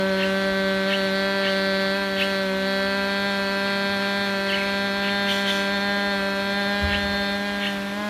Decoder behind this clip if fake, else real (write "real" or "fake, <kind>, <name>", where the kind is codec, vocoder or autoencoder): real